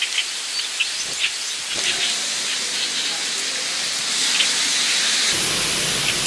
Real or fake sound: real